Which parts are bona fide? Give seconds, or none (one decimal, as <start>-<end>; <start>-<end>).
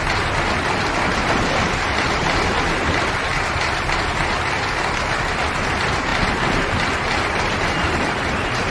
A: 0.0-8.7